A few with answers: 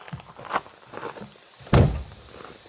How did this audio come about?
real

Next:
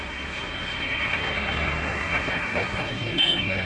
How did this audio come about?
fake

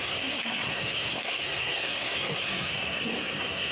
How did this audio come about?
fake